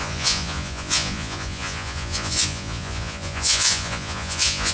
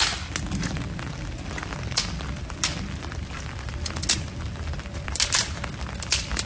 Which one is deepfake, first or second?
first